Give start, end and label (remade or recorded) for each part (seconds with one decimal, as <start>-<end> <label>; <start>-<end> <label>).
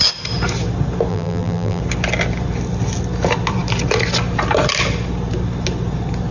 0.0-1.1 recorded; 1.1-1.8 remade; 1.8-6.3 recorded